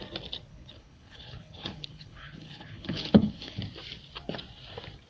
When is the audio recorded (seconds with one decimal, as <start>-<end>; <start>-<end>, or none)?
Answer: 0.0-0.5; 3.6-5.1